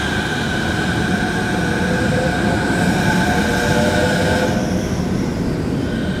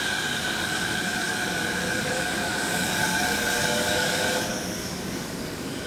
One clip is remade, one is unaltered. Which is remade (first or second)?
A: second